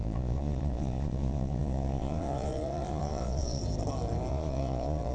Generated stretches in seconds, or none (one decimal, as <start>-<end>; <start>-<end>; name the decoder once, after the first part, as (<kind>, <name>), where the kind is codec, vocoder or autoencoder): 0.0-3.6 (vocoder, Vocos); 4.3-5.1